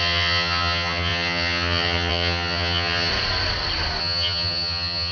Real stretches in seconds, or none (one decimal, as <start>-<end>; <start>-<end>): 3.1-4.0